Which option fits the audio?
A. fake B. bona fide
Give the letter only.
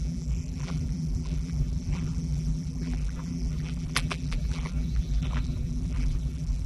A